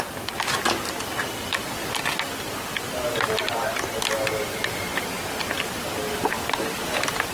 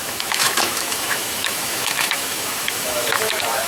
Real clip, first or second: first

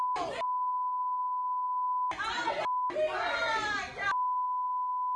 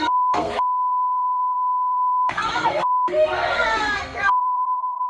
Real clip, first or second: first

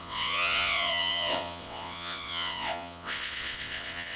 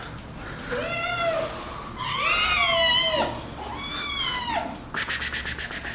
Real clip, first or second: second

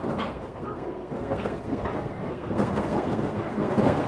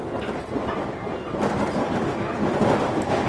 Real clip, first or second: second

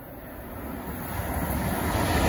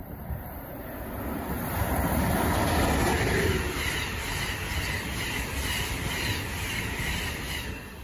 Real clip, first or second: first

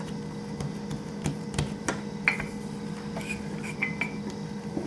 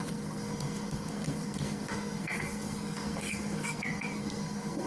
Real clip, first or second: first